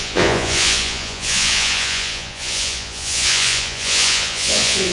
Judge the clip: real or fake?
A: fake